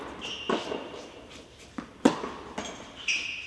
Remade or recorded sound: recorded